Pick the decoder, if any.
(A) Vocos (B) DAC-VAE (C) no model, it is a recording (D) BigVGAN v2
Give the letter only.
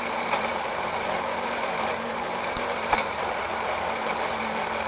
D